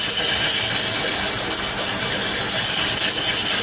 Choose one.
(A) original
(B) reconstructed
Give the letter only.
A